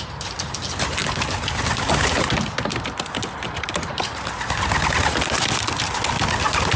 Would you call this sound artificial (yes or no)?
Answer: no